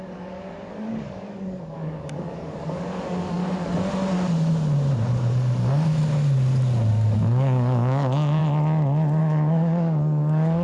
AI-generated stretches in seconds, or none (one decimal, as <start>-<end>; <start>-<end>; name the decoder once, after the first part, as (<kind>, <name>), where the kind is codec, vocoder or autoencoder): 0.0-3.4 (codec, DAC); 6.9-8.4; 9.2-10.6